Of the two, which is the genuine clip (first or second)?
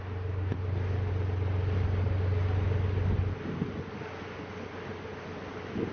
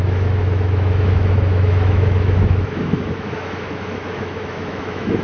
first